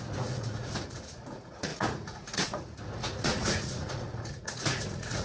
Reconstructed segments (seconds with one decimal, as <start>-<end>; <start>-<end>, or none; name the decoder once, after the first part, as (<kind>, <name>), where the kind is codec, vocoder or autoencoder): 0.0-5.2 (vocoder, Vocos)